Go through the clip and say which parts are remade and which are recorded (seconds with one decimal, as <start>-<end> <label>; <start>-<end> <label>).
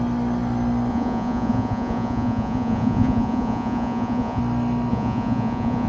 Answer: 0.0-0.9 recorded; 0.9-4.4 remade; 4.4-4.9 recorded; 4.9-5.9 remade